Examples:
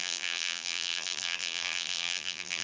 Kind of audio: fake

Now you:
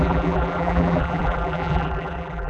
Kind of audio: fake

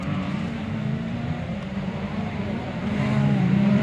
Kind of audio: fake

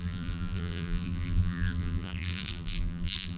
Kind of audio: fake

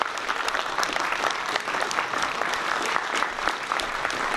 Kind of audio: fake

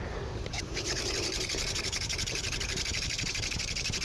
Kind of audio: fake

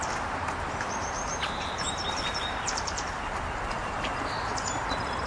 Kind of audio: fake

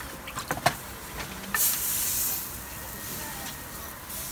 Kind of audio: real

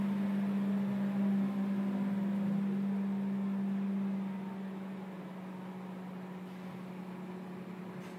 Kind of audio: real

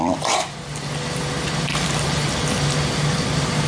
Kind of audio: real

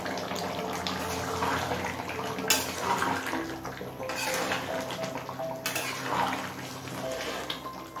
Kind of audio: real